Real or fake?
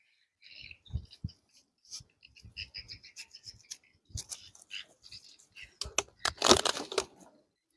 real